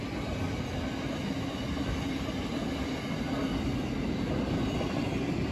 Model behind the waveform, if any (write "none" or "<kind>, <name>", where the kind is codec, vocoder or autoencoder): none